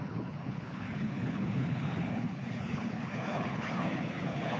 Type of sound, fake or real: fake